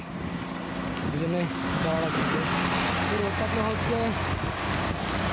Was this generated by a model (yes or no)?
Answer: no